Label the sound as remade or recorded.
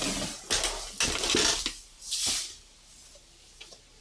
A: recorded